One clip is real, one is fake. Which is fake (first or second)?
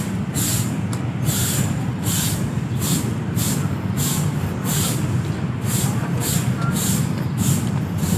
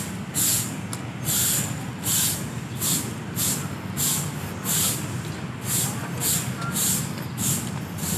first